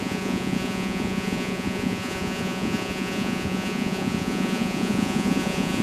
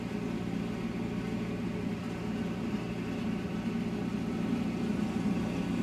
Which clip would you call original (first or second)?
second